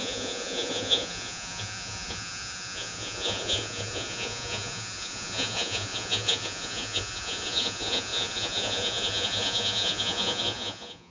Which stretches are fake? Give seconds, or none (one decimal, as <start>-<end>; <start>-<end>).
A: 0.0-11.1